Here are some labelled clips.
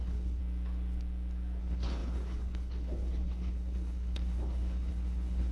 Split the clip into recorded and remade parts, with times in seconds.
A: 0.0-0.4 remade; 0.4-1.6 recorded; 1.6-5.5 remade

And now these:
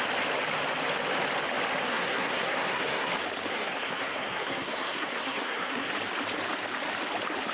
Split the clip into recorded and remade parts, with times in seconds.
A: 0.0-1.9 recorded; 1.9-3.1 remade; 3.1-3.5 recorded; 3.5-5.9 remade; 5.9-7.5 recorded